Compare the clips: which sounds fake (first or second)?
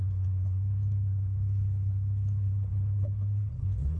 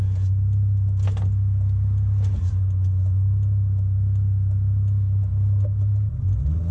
first